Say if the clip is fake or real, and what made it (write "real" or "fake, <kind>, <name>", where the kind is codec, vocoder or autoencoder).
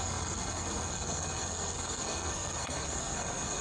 fake, codec, SNAC